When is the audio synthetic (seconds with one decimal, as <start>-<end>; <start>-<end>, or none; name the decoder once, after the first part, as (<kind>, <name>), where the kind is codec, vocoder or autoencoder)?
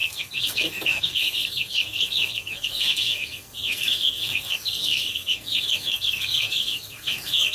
0.0-7.5 (codec, SNAC)